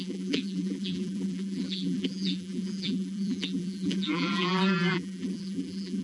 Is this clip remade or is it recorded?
remade